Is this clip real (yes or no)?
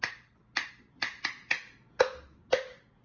yes